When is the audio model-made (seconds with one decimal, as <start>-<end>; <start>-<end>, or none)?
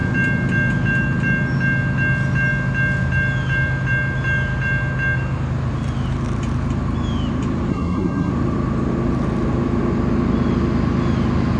7.7-8.3